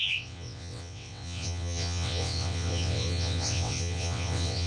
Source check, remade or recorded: remade